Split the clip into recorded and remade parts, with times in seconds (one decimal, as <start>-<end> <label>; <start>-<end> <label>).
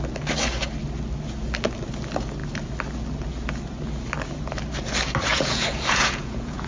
0.0-5.3 recorded; 5.3-6.7 remade